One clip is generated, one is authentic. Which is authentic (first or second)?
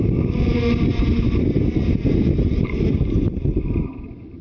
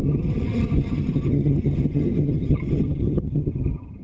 first